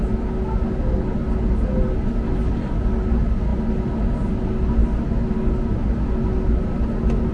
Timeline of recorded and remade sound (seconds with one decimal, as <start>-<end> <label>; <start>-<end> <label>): 0.0-7.3 recorded